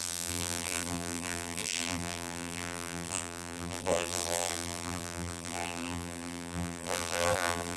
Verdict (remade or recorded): remade